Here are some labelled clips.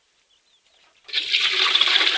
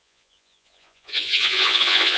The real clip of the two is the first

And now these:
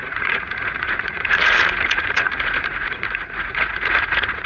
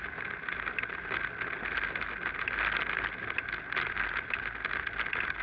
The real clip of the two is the second